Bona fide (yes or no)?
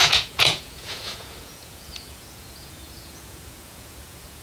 no